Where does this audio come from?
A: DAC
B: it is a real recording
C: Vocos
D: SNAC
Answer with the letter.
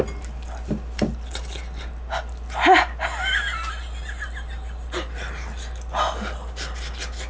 B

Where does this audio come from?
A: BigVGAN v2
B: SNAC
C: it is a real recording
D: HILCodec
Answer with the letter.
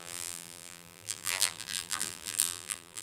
A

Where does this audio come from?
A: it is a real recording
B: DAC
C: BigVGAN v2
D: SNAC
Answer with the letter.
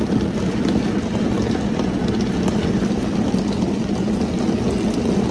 A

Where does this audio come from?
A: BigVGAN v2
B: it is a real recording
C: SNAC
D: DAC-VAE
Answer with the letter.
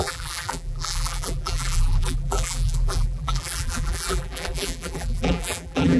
A